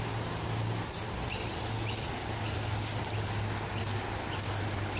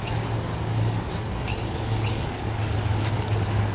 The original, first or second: first